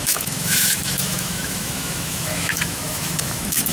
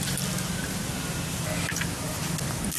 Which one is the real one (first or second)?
second